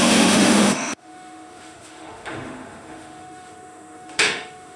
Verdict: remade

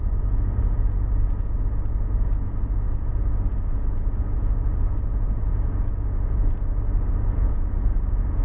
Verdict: remade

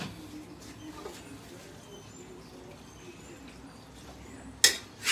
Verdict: recorded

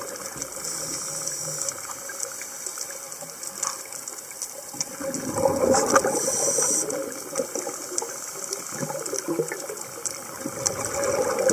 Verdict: recorded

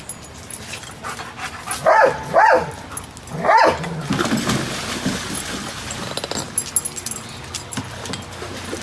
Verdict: recorded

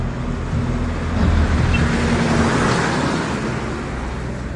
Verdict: recorded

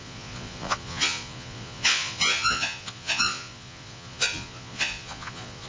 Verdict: remade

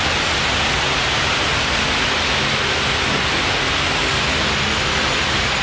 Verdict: recorded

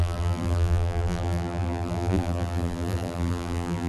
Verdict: remade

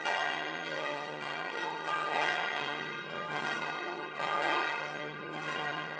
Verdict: remade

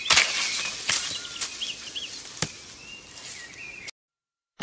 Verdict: recorded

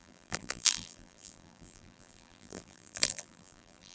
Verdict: remade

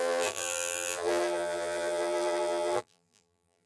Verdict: remade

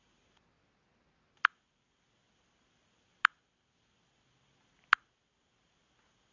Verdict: recorded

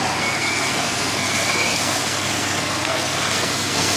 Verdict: remade